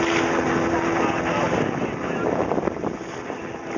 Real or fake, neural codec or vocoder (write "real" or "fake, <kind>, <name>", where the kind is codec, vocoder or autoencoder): real